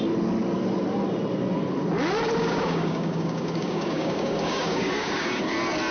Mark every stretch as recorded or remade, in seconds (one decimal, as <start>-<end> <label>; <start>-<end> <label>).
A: 0.0-2.4 recorded; 2.4-5.5 remade; 5.5-5.9 recorded